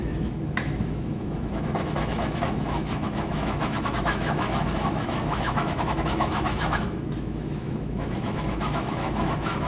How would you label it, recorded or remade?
remade